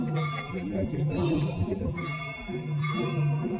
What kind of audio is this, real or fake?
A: fake